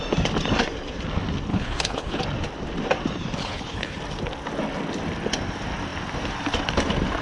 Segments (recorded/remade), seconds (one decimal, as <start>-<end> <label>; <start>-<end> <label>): 0.0-1.5 recorded; 1.5-2.2 remade; 2.2-3.4 recorded; 3.4-4.0 remade; 4.0-7.2 recorded